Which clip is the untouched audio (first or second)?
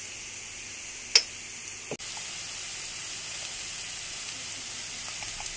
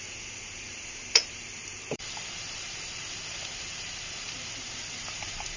first